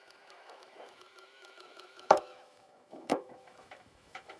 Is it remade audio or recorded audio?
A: remade